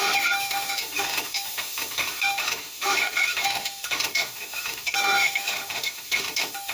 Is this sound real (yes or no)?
no